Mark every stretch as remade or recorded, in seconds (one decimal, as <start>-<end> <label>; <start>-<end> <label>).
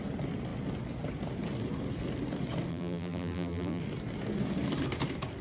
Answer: 0.0-2.7 recorded; 2.7-3.8 remade; 3.8-5.4 recorded